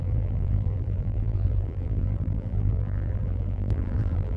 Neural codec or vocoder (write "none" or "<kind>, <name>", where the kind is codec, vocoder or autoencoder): vocoder, BigVGAN v2